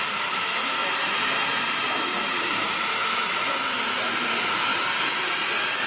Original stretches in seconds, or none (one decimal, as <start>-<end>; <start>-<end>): 0.0-0.8; 4.3-4.7; 5.5-5.9